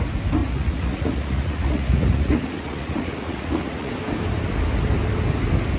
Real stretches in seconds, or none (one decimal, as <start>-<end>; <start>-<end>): 0.0-0.4; 3.9-5.8